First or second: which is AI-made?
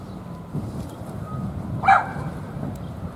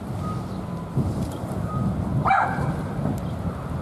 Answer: first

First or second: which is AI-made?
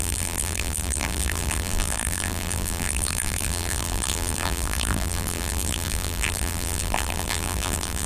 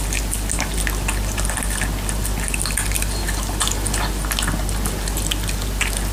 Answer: first